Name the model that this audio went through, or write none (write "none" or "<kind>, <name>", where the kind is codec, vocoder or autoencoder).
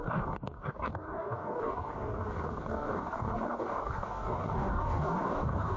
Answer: codec, DAC